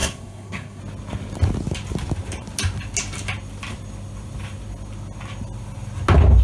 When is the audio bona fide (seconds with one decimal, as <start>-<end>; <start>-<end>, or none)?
0.8-6.4